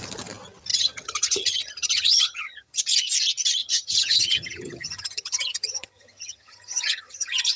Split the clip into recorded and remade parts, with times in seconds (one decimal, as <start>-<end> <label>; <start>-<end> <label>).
0.0-0.7 recorded; 0.7-2.8 remade; 2.8-3.6 recorded; 3.6-7.6 remade